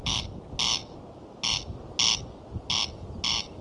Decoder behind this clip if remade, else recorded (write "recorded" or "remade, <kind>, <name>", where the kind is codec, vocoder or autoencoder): recorded